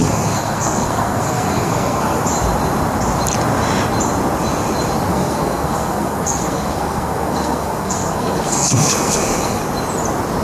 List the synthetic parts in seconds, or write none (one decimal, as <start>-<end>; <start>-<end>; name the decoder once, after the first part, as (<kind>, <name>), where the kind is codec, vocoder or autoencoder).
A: 0.0-2.2 (codec, SNAC); 5.1-9.6